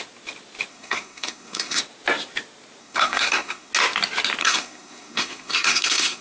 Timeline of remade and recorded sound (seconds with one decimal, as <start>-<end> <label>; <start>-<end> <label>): 0.0-0.7 recorded; 0.7-1.8 remade; 1.8-2.8 recorded; 2.8-3.7 remade; 3.7-4.4 recorded; 4.4-6.2 remade